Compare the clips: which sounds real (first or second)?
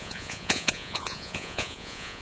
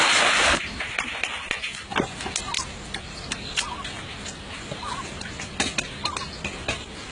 second